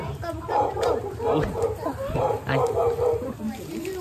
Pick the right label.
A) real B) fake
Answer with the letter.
A